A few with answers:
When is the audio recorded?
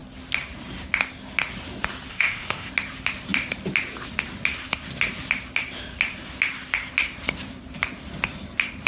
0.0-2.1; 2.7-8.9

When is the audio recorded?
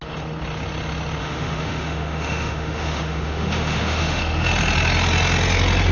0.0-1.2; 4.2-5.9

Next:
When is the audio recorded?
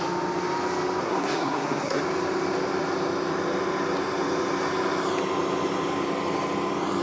0.0-1.0; 2.0-7.0